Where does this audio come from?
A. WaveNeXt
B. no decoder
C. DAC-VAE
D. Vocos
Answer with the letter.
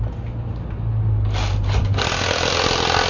B